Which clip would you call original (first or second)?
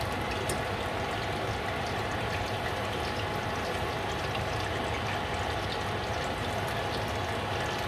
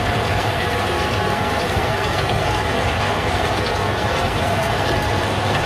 first